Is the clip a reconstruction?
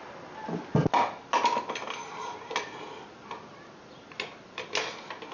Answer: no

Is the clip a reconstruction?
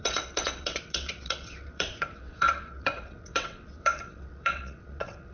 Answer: yes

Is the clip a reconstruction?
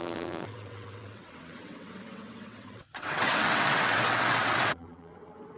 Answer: yes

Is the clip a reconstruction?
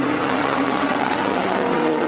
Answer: yes